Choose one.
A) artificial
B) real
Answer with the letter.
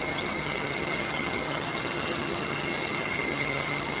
A